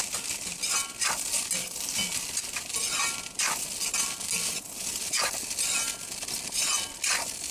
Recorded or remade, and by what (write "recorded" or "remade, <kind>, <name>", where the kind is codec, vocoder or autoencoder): recorded